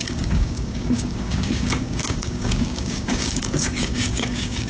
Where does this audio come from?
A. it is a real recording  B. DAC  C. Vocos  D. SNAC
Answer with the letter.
B